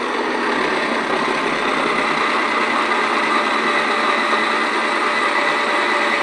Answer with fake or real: real